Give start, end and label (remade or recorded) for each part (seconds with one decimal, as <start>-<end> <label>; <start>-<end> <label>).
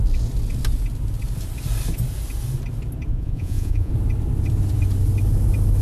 0.0-3.1 recorded; 3.1-3.9 remade; 3.9-5.8 recorded